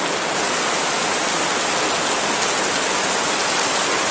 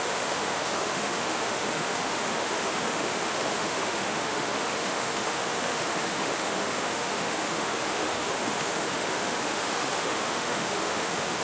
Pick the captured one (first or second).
first